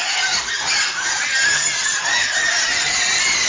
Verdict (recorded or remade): recorded